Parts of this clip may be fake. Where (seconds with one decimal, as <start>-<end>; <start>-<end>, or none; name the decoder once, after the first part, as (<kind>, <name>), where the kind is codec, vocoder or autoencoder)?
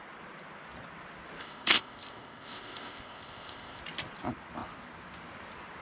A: 1.4-3.8 (codec, ZipCodec)